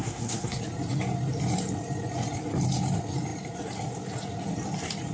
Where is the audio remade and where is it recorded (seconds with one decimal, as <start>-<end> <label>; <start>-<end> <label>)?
0.0-0.6 remade; 0.6-5.1 recorded